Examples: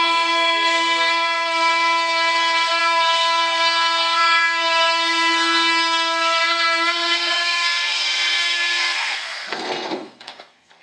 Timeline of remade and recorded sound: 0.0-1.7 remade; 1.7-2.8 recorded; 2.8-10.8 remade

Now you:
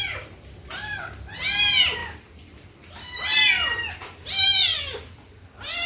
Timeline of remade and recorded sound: 0.0-1.0 remade; 1.0-5.9 recorded

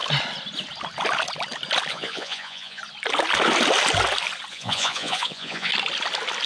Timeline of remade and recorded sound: 0.0-1.9 recorded; 1.9-2.8 remade; 2.8-4.5 recorded; 4.5-5.7 remade; 5.7-6.5 recorded